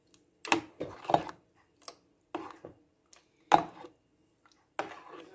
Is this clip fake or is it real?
real